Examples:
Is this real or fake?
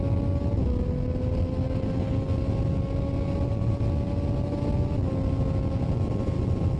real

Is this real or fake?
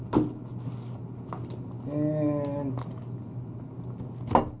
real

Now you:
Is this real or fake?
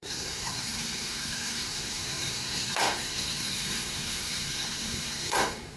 fake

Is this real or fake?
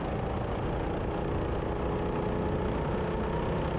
real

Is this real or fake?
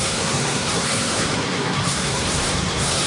fake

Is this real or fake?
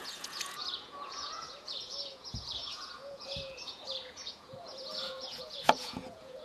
fake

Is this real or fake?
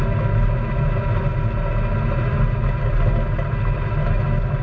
real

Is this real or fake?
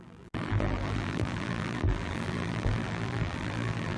fake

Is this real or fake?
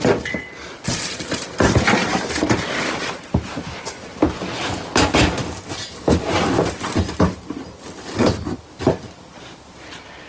real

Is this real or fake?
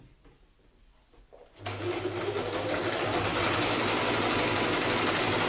real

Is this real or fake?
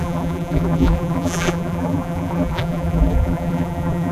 fake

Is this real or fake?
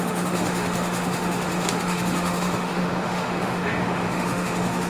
fake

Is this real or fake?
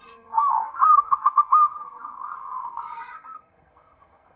fake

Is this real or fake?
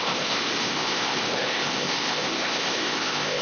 fake